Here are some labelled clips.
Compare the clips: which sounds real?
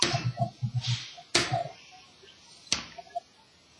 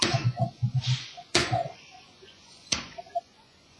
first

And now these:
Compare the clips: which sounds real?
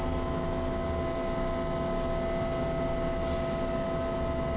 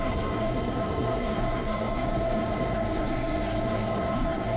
first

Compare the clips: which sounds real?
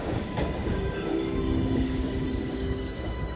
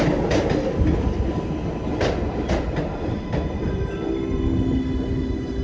second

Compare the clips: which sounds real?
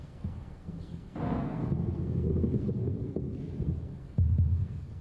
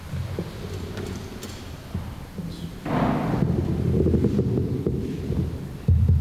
second